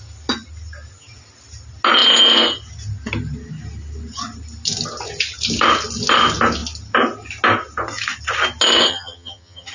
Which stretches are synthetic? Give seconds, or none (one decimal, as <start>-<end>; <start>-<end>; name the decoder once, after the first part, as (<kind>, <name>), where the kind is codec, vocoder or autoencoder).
8.9-9.7 (vocoder, HiFi-GAN)